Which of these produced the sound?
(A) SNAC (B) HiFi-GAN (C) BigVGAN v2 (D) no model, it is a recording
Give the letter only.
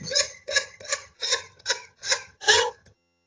B